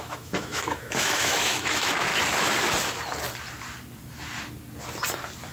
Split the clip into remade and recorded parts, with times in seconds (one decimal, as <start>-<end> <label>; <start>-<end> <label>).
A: 0.0-2.1 remade; 2.1-5.5 recorded